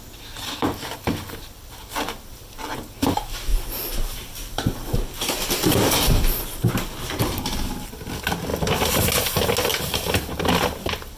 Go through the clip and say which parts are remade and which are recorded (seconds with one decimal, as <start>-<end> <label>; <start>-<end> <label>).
0.0-3.5 recorded; 3.5-6.7 remade; 6.7-8.5 recorded; 8.5-9.0 remade; 9.0-11.2 recorded